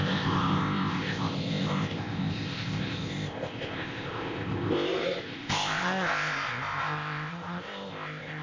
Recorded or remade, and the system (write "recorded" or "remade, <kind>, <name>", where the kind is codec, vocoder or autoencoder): remade, codec, ZipCodec